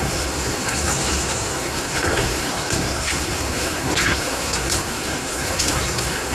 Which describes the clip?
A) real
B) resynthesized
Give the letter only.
B